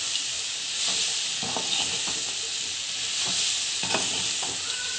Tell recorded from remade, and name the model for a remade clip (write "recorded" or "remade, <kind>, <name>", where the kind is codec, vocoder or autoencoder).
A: recorded